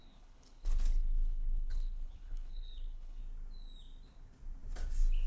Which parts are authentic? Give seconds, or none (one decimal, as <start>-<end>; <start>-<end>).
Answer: 3.2-5.3

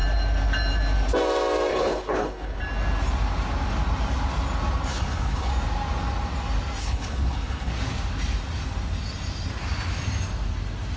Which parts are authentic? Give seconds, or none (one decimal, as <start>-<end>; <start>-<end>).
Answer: 0.0-1.7; 2.6-4.9; 5.5-6.8; 7.7-11.0